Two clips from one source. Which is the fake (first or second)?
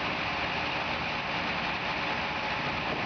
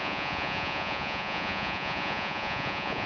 second